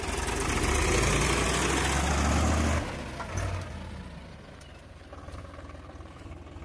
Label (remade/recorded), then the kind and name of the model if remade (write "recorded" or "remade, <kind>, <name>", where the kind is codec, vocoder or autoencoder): recorded